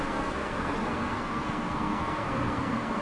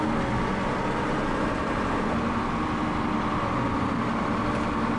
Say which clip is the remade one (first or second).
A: first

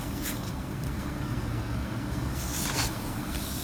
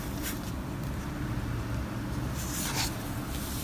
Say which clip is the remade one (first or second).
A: first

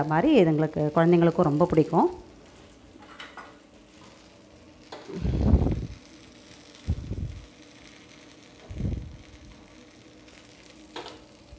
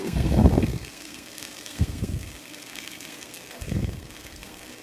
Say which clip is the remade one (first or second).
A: second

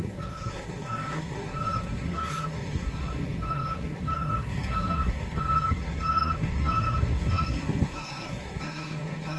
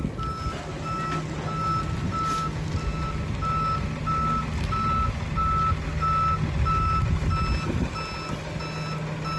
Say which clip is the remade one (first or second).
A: first